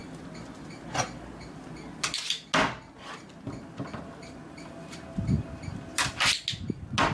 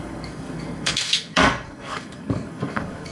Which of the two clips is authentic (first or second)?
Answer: first